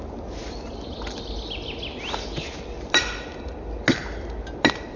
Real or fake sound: real